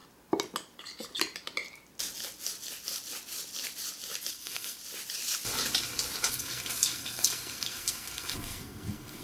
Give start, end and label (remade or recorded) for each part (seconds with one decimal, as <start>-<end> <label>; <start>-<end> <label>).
0.0-4.3 recorded; 4.3-4.8 remade; 4.8-6.3 recorded; 6.3-9.2 remade